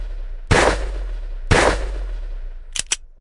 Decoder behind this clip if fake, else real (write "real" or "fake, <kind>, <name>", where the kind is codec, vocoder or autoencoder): real